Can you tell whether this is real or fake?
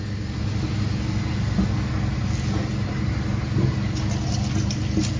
real